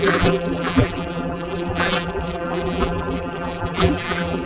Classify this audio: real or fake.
fake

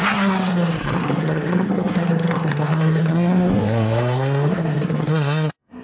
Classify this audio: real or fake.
fake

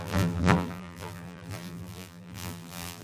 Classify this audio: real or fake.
fake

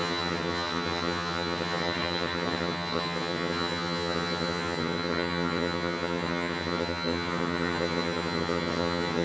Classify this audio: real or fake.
fake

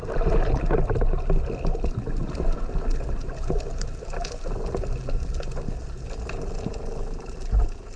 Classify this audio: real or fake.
real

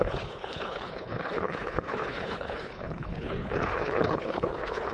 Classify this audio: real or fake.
fake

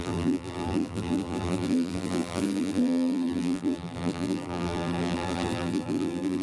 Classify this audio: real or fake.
fake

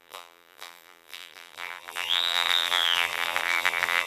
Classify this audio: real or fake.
fake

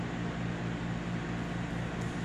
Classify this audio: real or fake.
real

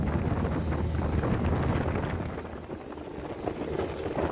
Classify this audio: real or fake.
real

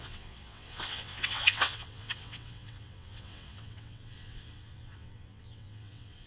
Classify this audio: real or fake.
fake